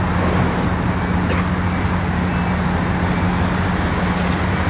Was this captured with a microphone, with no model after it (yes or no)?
yes